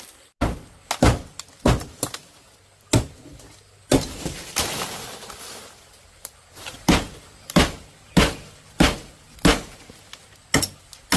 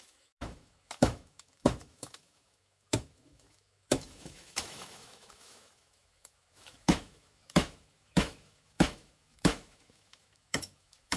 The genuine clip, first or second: first